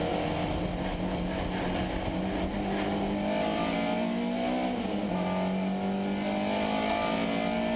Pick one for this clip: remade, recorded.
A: recorded